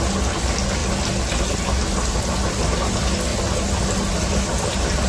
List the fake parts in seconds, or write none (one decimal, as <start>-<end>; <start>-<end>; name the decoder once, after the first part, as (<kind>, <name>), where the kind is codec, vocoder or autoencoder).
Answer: none

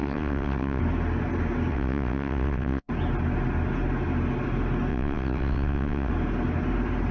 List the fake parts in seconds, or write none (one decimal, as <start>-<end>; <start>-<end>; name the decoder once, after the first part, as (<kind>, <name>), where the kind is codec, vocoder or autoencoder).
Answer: 0.0-0.8 (vocoder, WaveNeXt); 1.7-2.9; 4.9-6.1

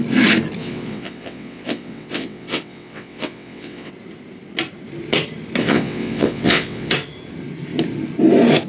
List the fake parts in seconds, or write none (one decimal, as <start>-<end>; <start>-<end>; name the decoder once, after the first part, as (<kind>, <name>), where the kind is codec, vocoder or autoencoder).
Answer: 0.6-3.9 (vocoder, WaveNeXt); 5.6-6.9

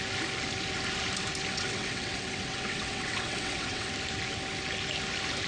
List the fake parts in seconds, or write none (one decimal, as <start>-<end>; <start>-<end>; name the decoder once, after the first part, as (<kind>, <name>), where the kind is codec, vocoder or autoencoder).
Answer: 1.5-3.9 (vocoder, WaveNeXt)